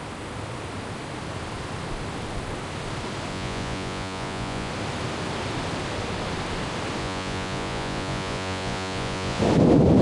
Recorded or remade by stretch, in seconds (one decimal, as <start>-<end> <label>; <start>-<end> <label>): 0.0-3.3 recorded; 3.3-4.7 remade; 4.7-7.0 recorded; 7.0-9.4 remade; 9.4-10.0 recorded